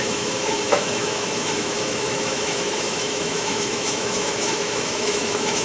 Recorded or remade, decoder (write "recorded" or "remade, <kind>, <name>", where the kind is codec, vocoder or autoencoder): remade, autoencoder, DAC-VAE